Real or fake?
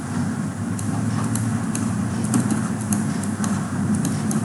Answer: real